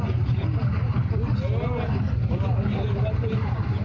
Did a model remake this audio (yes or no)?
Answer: no